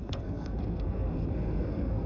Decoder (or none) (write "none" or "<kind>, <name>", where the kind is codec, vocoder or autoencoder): codec, SNAC